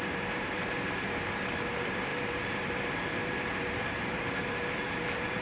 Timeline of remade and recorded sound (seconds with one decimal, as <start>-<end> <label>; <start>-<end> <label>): 0.0-5.4 remade

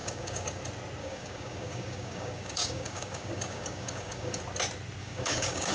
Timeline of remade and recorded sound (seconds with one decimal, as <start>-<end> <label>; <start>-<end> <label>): 0.0-0.6 remade; 0.6-1.0 recorded; 1.0-4.4 remade; 4.4-5.0 recorded; 5.0-5.7 remade